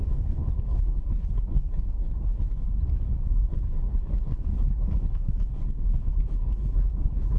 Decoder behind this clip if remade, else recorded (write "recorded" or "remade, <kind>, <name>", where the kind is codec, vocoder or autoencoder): remade, codec, HILCodec